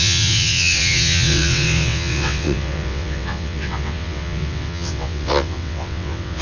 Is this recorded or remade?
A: remade